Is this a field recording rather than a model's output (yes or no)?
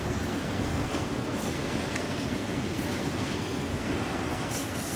no